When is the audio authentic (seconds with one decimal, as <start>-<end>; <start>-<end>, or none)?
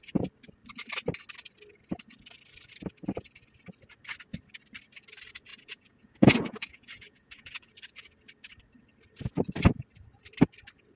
0.0-5.5; 7.7-11.0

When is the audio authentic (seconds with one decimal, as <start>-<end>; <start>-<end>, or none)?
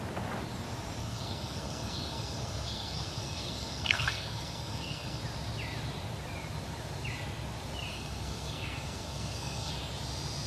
0.0-1.0; 5.2-7.9; 9.7-10.5